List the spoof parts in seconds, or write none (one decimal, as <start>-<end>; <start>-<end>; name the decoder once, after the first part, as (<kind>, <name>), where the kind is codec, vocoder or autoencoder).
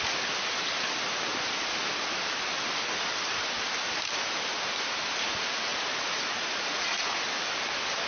5.7-7.2 (vocoder, Vocos)